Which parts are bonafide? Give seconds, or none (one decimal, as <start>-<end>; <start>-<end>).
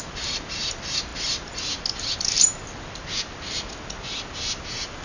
0.0-5.0